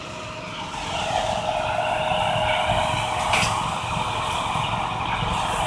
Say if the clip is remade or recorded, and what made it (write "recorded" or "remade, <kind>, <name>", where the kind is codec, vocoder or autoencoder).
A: recorded